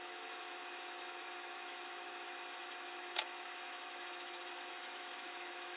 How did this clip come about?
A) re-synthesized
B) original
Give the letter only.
A